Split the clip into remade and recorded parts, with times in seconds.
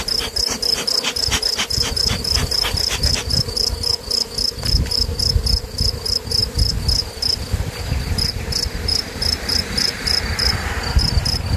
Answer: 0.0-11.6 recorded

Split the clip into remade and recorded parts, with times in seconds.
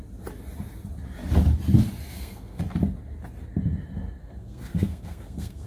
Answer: 0.0-2.1 recorded; 2.1-2.6 remade; 2.6-4.2 recorded; 4.2-5.7 remade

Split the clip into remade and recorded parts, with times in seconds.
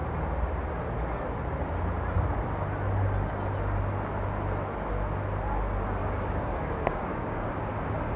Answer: 0.0-6.0 recorded; 6.0-7.5 remade; 7.5-8.2 recorded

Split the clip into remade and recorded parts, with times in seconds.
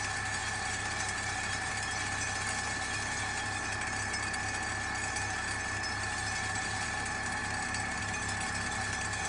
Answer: 0.0-0.4 recorded; 0.4-1.7 remade; 1.7-7.4 recorded; 7.4-8.0 remade; 8.0-9.3 recorded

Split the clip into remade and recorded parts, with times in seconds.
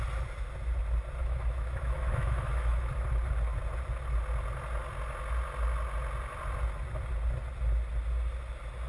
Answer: 0.0-1.2 recorded; 1.2-2.9 remade; 2.9-8.9 recorded